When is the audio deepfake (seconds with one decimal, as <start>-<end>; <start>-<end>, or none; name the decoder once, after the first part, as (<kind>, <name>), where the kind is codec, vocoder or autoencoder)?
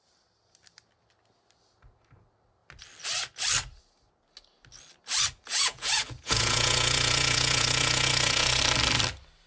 5.5-8.6 (vocoder, Vocos)